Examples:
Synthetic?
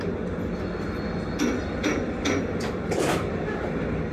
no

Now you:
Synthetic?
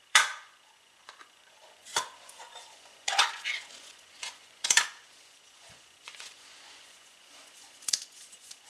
yes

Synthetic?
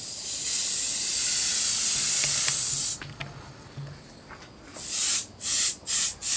no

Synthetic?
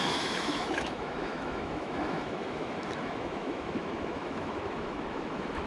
yes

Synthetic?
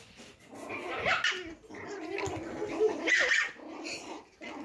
no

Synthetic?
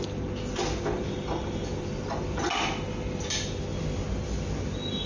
no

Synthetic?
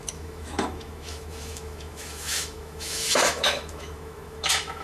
yes